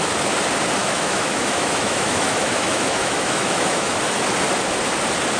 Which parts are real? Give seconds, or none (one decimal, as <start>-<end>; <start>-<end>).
0.0-0.8; 4.0-5.4

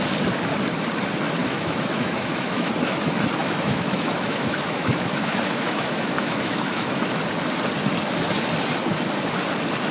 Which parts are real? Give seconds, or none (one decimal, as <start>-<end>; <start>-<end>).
0.0-1.4; 2.7-3.4; 7.2-9.9

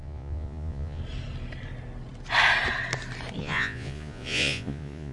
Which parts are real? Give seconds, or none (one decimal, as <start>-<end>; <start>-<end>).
1.0-3.4

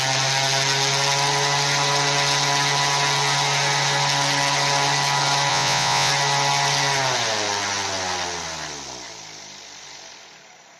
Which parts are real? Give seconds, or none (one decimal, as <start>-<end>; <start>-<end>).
0.0-5.5; 6.1-10.8

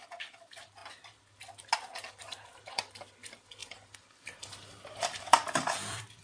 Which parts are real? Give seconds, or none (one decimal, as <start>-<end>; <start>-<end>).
0.8-2.6

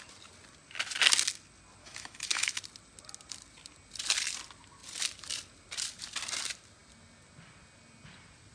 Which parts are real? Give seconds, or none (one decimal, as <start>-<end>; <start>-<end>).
0.0-1.8; 2.6-8.5